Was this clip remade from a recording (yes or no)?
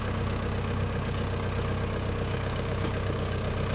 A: yes